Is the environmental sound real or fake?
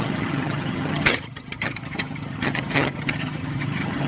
fake